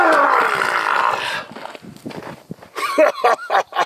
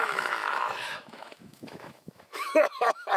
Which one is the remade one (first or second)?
second